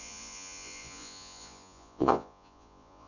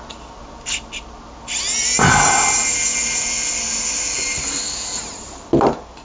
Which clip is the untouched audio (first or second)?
second